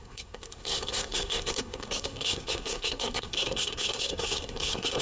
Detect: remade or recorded remade